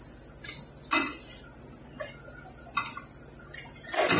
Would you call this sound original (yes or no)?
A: yes